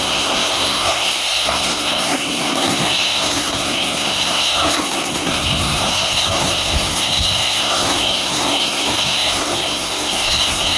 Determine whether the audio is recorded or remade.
remade